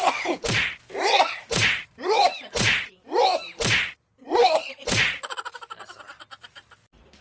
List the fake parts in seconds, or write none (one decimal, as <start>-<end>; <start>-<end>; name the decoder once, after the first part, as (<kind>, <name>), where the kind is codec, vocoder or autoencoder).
1.4-2.9 (vocoder, Vocos); 4.4-5.6